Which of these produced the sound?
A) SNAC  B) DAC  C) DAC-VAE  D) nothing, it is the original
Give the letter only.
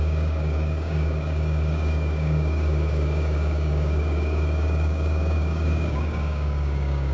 B